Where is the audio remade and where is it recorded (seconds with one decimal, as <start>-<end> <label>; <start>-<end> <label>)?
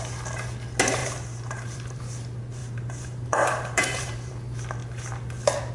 0.0-1.0 recorded; 1.0-2.0 remade; 2.0-2.6 recorded; 2.6-4.3 remade; 4.3-5.7 recorded